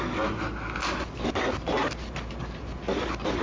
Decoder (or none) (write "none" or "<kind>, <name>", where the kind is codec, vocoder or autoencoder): none